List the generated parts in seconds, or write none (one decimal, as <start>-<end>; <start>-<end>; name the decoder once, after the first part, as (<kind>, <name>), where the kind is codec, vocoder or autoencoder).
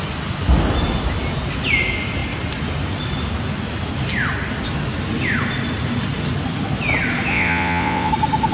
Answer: 7.3-8.1 (vocoder, WaveNeXt)